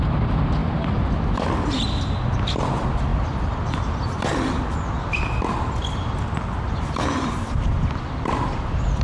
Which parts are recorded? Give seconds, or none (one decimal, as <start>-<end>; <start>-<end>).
0.0-9.0